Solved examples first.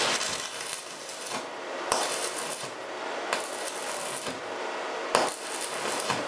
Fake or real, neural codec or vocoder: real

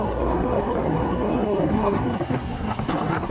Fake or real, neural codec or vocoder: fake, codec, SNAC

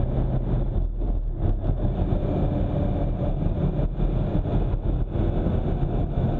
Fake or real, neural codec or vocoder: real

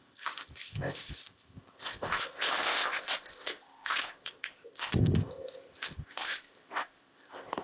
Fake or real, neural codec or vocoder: fake, codec, ZipCodec